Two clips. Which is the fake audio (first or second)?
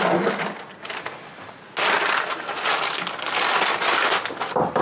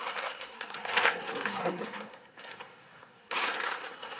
second